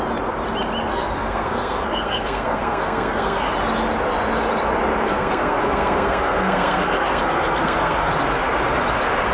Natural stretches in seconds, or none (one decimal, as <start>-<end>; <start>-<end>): 0.0-0.9; 3.5-5.1; 8.1-9.3